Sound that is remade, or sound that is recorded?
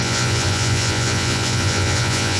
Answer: remade